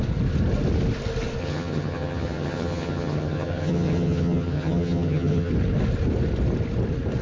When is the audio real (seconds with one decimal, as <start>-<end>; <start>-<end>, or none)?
0.0-1.4; 5.5-7.2